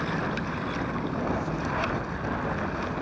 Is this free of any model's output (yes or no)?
yes